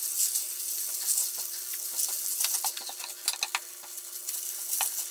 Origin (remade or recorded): recorded